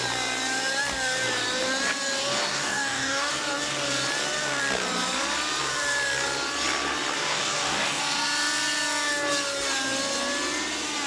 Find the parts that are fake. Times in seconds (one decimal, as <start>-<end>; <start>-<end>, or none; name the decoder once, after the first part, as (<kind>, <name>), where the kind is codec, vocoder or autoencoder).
2.5-3.3 (codec, DAC); 7.3-8.0